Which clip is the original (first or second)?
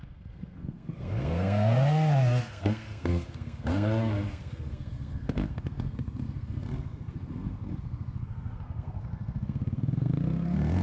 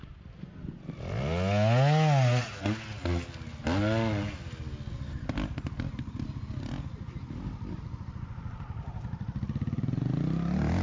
second